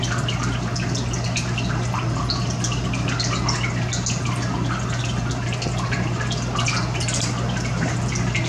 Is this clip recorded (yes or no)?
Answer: yes